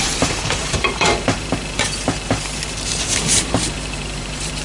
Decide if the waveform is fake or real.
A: fake